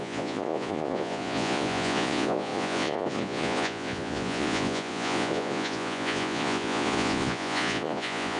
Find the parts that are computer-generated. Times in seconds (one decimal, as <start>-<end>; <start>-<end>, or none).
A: 0.0-8.4